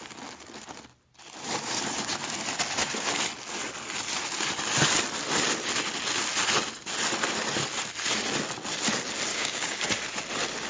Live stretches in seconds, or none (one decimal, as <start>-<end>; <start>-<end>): 0.0-9.3; 9.8-10.7